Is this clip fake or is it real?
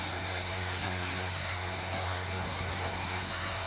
fake